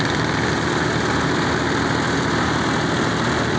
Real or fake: real